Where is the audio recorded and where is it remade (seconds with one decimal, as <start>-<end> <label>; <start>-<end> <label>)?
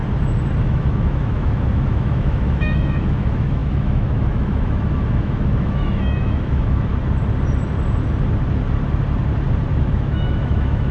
0.0-0.6 recorded; 0.6-6.9 remade; 6.9-9.8 recorded; 9.8-10.9 remade